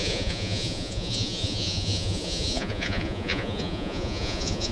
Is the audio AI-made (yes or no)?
yes